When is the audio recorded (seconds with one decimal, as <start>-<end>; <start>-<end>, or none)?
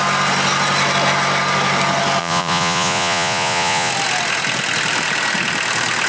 0.0-2.2; 3.9-6.1